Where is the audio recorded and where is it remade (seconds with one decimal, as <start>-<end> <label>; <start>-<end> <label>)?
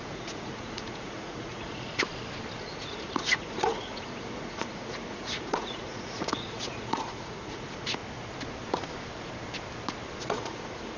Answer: 0.0-2.1 remade; 2.1-2.6 recorded; 2.6-8.0 remade; 8.0-10.2 recorded; 10.2-11.0 remade